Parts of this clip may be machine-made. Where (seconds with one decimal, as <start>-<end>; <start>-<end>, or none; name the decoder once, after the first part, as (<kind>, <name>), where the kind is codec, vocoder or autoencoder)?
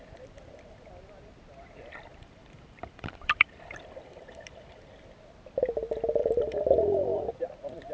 2.1-4.8 (vocoder, BigVGAN v2); 6.2-7.3